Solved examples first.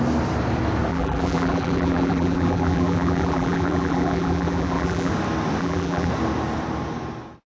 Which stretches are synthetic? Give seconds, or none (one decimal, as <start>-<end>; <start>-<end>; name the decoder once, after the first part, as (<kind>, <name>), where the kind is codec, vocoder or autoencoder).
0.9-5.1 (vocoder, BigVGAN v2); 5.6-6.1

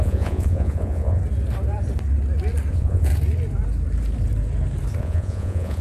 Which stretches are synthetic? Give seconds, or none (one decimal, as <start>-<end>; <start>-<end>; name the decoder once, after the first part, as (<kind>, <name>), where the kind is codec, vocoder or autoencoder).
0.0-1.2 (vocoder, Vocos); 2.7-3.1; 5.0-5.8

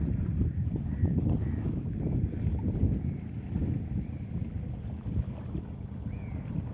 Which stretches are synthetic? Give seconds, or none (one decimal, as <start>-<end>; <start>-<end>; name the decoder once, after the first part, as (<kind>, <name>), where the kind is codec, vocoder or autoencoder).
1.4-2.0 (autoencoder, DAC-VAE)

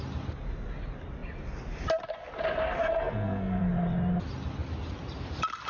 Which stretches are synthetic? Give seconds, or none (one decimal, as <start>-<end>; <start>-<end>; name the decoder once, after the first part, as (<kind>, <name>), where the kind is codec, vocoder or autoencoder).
2.8-3.6 (codec, SNAC)

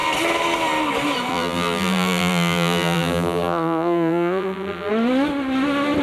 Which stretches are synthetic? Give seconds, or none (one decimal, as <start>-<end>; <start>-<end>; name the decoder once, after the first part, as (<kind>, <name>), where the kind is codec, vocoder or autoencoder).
1.3-4.9 (vocoder, BigVGAN v2)